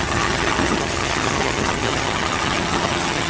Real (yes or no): no